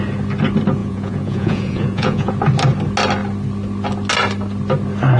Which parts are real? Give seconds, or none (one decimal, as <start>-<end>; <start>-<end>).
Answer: 0.0-0.8; 2.3-5.2

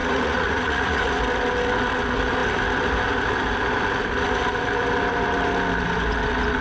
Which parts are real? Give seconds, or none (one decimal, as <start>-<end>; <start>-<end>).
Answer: 1.2-6.6